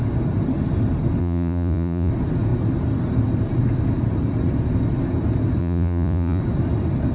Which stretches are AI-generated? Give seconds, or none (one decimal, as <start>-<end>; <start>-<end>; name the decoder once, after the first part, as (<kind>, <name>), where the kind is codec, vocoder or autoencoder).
1.2-2.1 (vocoder, Vocos); 5.6-6.4